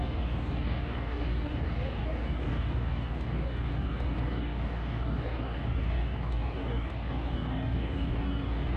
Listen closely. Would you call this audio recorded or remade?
remade